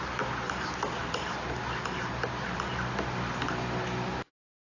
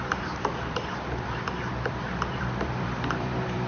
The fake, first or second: second